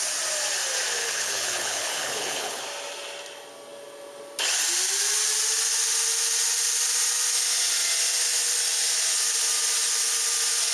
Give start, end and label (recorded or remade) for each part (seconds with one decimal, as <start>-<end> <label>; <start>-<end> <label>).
0.0-1.0 recorded; 1.0-2.6 remade; 2.6-10.7 recorded